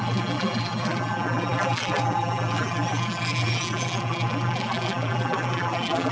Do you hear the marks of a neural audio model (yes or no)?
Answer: yes